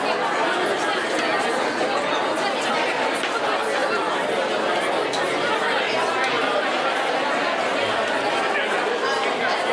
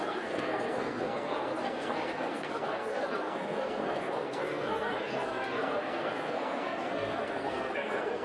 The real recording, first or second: first